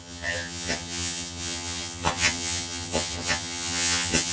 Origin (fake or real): fake